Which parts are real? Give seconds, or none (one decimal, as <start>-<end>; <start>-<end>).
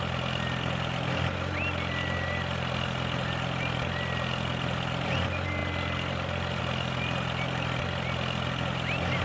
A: 0.0-9.2